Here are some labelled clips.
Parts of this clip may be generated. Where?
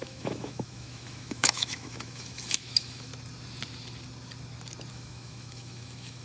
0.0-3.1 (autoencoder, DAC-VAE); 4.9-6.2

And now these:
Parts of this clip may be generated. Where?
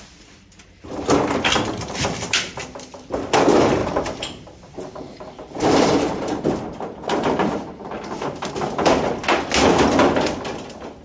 3.8-8.5 (vocoder, BigVGAN v2)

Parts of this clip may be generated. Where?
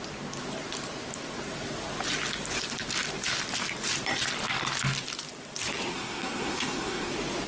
5.9-7.1 (codec, SNAC)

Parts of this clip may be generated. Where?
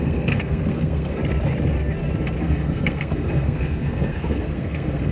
0.0-1.2 (codec, SNAC); 2.4-5.1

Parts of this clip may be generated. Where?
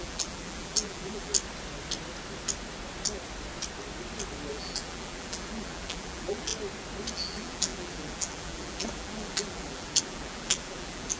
0.0-1.3 (vocoder, BigVGAN v2); 4.5-6.5; 7.1-11.2